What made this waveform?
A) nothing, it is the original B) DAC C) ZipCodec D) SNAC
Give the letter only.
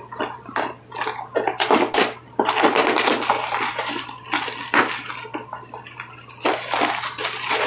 A